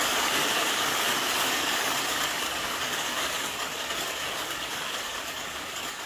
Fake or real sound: fake